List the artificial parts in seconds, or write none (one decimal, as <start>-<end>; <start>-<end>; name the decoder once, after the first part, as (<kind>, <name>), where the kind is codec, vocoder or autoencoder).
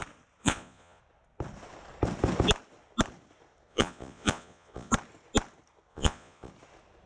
0.4-1.0 (vocoder, Vocos); 3.7-4.9; 5.9-6.5